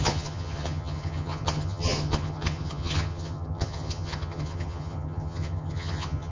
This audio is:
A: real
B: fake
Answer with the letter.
B